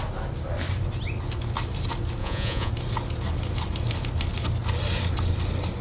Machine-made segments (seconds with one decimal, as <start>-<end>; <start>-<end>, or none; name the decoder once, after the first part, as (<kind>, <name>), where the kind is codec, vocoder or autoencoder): 2.2-2.7 (vocoder, Vocos)